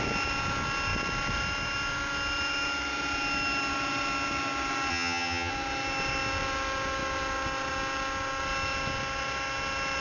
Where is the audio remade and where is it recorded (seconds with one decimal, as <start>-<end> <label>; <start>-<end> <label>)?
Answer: 0.0-4.9 recorded; 4.9-5.5 remade; 5.5-10.0 recorded